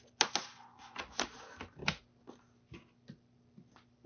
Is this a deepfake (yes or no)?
no